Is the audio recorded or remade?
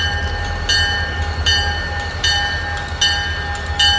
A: recorded